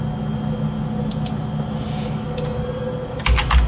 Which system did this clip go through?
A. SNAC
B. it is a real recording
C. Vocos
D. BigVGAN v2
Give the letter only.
B